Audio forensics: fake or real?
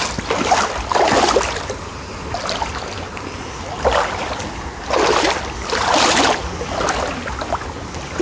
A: real